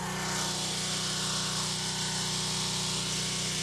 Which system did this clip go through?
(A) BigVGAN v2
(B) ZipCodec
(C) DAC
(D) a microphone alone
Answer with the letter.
D